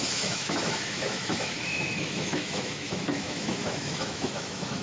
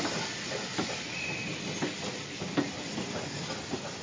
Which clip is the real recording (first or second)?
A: second